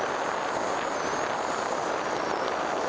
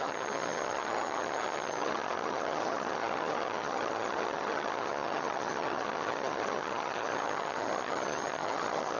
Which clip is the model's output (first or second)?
second